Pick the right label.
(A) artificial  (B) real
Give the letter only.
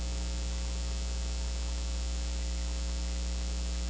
B